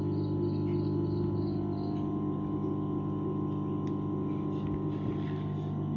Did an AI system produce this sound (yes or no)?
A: no